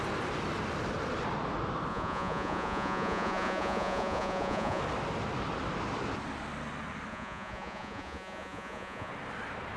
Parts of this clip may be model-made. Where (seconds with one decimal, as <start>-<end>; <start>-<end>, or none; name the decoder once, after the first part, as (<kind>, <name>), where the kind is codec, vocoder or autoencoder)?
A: 1.9-4.8 (vocoder, Vocos); 7.1-9.1

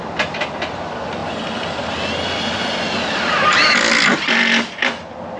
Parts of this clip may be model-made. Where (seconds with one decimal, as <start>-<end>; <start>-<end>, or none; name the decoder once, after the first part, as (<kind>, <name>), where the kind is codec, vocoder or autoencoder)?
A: none

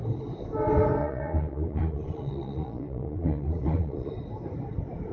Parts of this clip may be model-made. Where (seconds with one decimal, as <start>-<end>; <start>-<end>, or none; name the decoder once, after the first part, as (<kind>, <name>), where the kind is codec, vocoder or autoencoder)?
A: 1.0-4.1 (vocoder, Vocos)

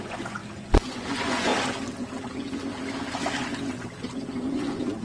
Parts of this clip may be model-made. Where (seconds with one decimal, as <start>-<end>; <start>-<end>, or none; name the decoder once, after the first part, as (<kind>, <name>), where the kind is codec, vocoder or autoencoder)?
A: 0.0-0.4 (vocoder, Vocos); 0.9-1.5; 4.5-5.0

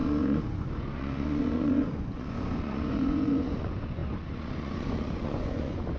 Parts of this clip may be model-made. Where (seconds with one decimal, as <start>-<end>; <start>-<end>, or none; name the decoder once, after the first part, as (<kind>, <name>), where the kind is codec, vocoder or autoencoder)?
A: 0.0-6.0 (vocoder, Vocos)

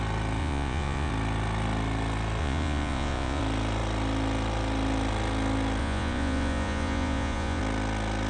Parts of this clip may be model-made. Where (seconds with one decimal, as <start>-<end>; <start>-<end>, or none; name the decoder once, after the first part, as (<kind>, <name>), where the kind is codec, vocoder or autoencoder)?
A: 0.4-1.1 (vocoder, Vocos); 2.4-3.4; 5.8-7.6

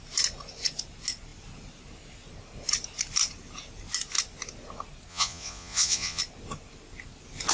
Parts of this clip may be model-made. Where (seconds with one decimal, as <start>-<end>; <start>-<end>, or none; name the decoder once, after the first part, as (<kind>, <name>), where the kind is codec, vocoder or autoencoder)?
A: 5.1-6.2 (vocoder, Vocos)

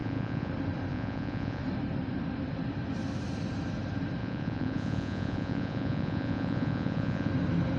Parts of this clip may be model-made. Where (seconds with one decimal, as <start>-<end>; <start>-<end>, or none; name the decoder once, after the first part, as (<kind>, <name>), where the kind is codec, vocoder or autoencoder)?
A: 0.0-0.5 (vocoder, Vocos); 0.9-1.6; 4.2-7.3